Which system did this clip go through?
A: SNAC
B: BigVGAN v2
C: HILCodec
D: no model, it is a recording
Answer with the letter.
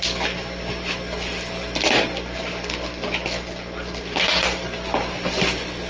D